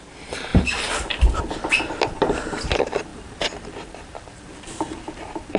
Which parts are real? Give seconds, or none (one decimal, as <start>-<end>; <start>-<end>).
0.0-0.5; 1.4-3.1